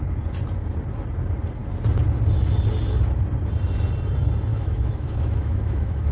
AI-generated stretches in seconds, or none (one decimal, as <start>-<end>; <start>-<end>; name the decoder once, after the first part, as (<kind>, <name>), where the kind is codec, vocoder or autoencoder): 4.5-6.1 (autoencoder, DAC-VAE)